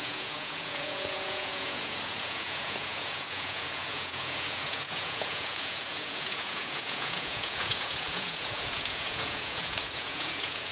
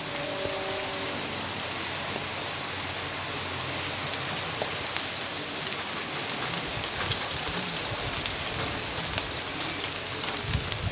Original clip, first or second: second